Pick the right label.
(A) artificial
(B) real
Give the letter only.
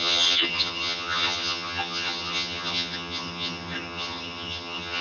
A